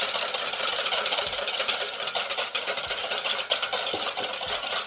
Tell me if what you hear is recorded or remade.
recorded